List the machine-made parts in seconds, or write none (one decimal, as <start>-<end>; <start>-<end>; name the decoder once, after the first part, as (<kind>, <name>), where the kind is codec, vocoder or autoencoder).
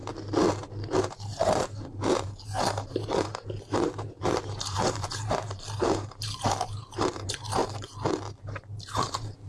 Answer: 1.0-7.6 (vocoder, BigVGAN v2); 8.4-9.5